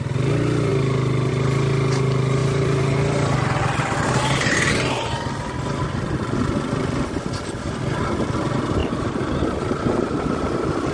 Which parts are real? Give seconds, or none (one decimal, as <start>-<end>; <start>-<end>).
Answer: 0.0-2.4; 4.7-8.8; 9.4-10.9